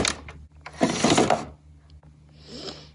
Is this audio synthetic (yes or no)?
no